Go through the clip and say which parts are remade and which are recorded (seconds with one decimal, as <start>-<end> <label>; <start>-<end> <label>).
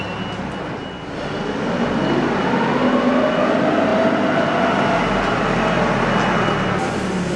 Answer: 0.0-7.4 recorded